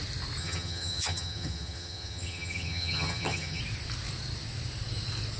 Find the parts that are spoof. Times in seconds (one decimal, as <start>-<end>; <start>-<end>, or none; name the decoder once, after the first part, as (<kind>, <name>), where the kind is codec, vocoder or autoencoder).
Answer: 0.4-3.6 (vocoder, HiFi-GAN)